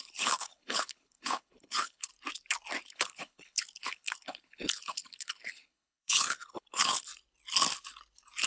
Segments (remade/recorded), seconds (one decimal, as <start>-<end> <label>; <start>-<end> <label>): 0.0-2.1 remade; 2.1-2.9 recorded; 2.9-7.1 remade; 7.1-8.5 recorded